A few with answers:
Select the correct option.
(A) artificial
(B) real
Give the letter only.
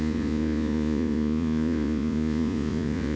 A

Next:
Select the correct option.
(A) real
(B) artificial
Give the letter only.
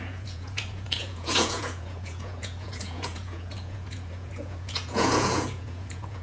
B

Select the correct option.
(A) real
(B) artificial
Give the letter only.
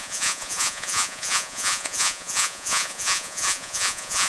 B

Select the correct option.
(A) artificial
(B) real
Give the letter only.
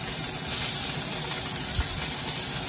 B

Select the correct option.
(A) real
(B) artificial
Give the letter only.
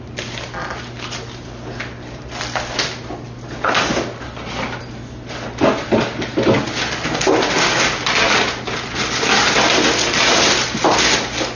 A